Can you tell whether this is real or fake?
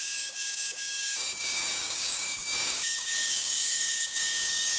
fake